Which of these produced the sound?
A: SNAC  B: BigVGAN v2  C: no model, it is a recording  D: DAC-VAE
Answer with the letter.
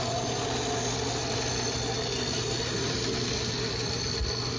C